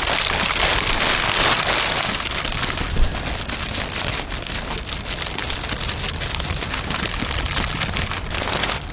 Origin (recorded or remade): recorded